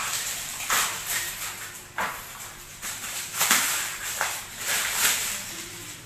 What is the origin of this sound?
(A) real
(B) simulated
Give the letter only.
B